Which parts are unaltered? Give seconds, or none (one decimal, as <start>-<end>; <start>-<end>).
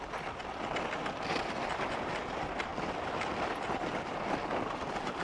0.0-5.2